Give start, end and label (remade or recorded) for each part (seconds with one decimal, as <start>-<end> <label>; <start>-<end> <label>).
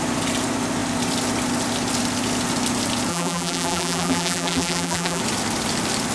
0.0-3.1 recorded; 3.1-5.2 remade; 5.2-6.1 recorded